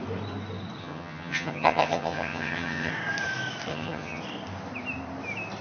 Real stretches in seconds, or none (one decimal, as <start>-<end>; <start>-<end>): 0.0-0.8; 2.9-3.7; 4.2-5.6